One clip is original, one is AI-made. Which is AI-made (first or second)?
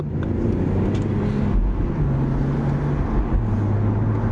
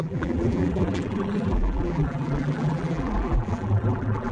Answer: second